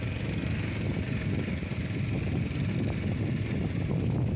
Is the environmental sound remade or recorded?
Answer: recorded